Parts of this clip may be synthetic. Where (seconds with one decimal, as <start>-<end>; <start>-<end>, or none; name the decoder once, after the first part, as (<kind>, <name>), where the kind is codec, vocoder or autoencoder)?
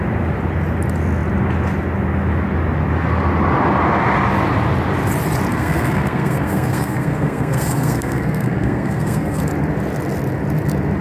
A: 5.5-9.4 (codec, SNAC)